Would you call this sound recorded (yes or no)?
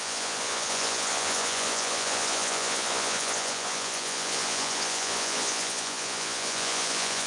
no